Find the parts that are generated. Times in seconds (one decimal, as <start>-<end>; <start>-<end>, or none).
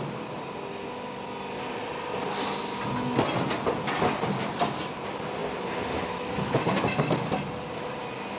none